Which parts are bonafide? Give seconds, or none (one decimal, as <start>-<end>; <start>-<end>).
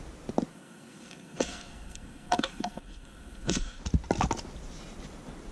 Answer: 0.0-0.5; 3.8-5.5